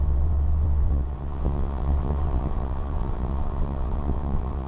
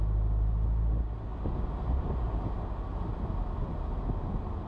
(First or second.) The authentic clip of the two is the second